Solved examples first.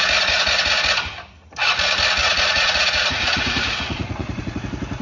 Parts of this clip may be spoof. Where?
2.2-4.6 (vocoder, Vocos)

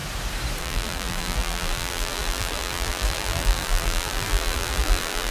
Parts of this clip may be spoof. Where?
0.6-5.3 (vocoder, BigVGAN v2)